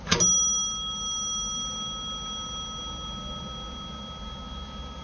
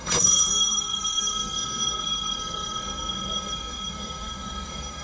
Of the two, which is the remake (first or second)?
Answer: second